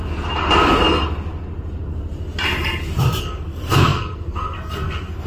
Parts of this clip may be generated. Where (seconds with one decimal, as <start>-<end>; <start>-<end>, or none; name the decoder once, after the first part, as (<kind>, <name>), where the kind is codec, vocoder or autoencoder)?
3.2-5.3 (codec, SNAC)